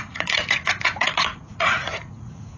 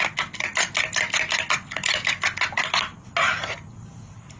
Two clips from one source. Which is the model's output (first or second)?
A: first